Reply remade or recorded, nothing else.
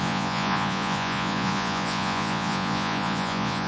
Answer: remade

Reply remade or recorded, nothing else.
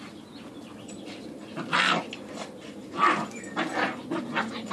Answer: recorded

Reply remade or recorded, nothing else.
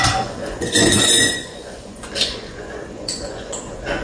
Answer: remade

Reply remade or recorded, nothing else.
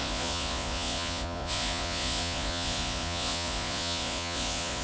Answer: remade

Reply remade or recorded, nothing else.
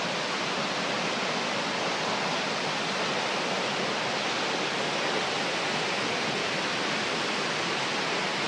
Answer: recorded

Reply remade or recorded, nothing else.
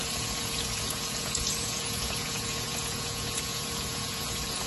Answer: remade